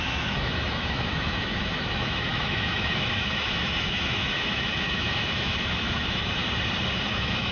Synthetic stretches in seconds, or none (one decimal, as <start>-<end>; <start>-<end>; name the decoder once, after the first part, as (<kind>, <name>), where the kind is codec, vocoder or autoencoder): 0.0-6.4 (autoencoder, DAC-VAE); 7.1-7.5

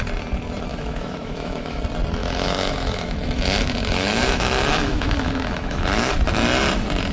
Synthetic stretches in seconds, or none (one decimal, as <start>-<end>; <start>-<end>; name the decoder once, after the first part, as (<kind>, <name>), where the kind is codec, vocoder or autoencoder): 0.7-1.8 (autoencoder, DAC-VAE); 2.2-6.1

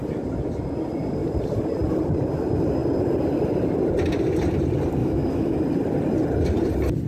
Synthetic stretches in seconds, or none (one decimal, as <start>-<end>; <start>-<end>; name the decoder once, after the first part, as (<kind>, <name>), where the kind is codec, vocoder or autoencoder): 5.0-5.6 (autoencoder, DAC-VAE)

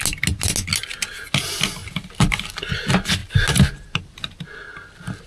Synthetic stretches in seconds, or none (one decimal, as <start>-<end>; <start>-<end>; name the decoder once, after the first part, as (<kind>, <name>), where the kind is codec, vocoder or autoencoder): none

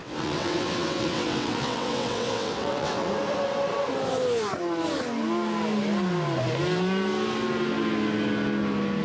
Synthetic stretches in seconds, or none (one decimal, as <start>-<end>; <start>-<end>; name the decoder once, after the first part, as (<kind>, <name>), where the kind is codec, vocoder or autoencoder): 0.0-3.1 (vocoder, WaveNeXt)

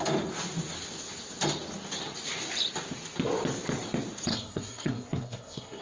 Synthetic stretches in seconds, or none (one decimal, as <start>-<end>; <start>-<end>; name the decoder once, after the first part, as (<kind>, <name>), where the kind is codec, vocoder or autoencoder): 4.3-5.8 (codec, SNAC)